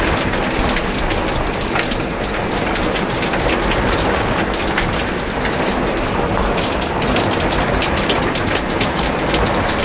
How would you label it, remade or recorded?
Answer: recorded